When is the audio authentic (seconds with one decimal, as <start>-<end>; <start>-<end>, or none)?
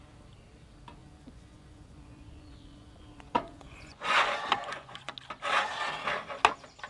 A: 0.0-1.0; 5.1-6.9